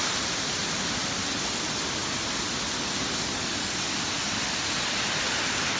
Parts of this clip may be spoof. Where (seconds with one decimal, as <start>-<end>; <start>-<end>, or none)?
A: none